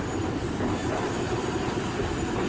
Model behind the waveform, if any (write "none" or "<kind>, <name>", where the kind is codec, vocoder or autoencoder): none